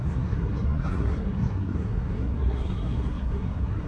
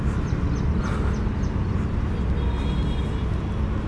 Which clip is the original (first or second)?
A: second